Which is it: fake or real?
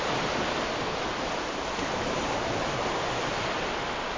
real